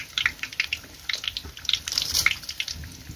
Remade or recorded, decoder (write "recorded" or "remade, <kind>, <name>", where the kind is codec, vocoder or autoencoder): remade, vocoder, BigVGAN v2